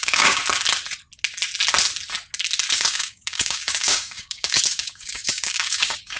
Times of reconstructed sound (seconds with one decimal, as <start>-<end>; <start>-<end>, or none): 0.0-0.4; 2.7-6.2